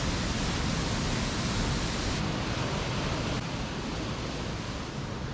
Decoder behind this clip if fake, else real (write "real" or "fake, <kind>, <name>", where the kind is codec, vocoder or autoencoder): real